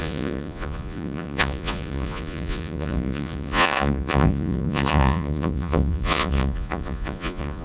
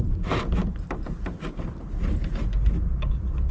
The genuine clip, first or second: second